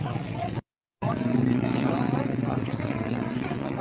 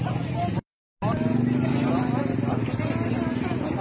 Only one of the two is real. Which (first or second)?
second